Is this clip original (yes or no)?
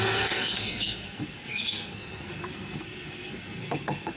no